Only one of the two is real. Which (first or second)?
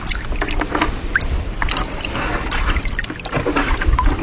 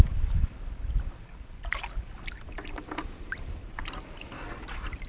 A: first